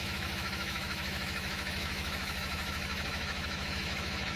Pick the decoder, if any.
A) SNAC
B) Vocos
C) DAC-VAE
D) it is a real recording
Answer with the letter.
C